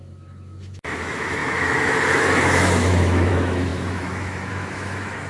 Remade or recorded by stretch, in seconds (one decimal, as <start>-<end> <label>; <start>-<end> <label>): 0.0-5.3 remade